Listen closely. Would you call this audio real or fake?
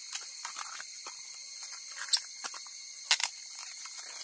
real